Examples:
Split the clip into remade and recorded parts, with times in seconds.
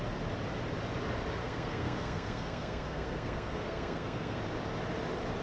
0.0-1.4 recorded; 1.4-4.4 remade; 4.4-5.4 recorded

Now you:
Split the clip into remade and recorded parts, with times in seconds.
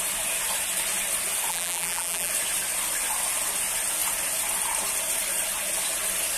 0.0-1.5 recorded; 1.5-2.3 remade; 2.3-6.4 recorded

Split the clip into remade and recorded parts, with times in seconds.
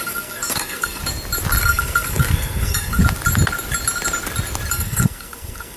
0.0-1.0 remade; 1.0-1.6 recorded; 1.6-3.0 remade; 3.0-4.7 recorded; 4.7-5.8 remade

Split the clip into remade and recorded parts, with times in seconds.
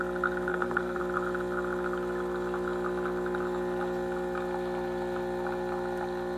0.0-0.5 recorded; 0.5-1.0 remade; 1.0-6.4 recorded